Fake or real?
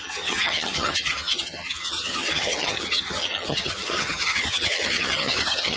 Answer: fake